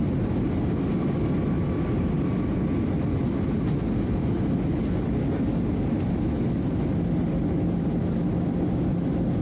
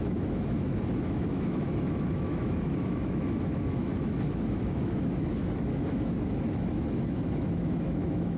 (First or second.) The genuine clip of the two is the first